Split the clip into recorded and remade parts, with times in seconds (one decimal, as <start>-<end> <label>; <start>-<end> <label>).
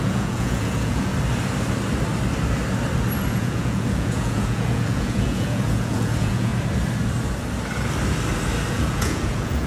0.0-1.1 remade; 1.1-3.3 recorded; 3.3-6.5 remade; 6.5-8.7 recorded; 8.7-9.7 remade